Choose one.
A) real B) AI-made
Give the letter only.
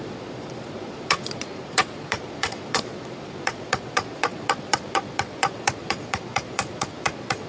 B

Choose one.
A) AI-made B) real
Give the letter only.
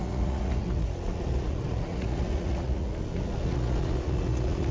A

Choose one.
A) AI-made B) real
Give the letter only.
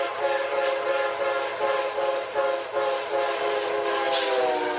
B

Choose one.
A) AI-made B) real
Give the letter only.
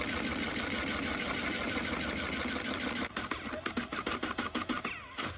B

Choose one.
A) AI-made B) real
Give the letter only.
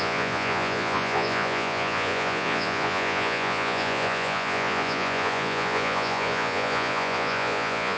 A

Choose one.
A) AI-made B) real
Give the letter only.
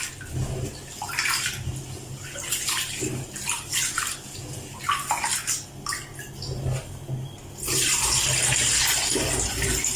B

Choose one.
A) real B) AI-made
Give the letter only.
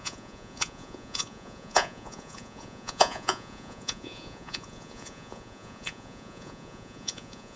B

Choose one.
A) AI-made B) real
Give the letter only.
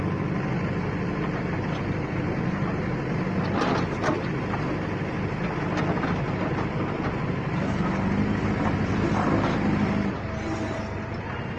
B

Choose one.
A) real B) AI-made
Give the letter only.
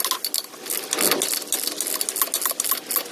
A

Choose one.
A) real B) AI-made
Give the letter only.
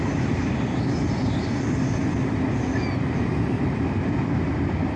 A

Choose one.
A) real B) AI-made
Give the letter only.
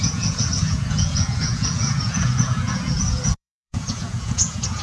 B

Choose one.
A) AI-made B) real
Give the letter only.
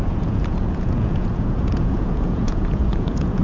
A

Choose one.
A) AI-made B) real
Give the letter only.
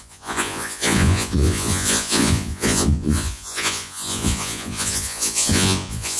A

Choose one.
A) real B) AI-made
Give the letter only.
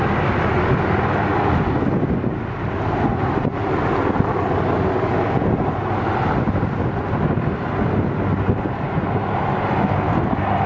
A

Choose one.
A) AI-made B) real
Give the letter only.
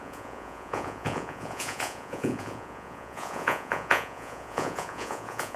A